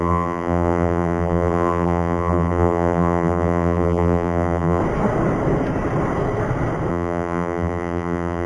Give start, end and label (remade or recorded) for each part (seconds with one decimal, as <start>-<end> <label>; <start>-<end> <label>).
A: 0.0-4.8 remade; 4.8-6.9 recorded; 6.9-8.5 remade